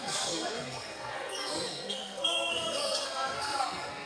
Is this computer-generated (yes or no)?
yes